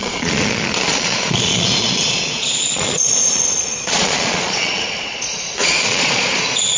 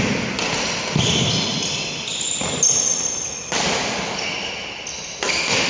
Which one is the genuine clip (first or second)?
second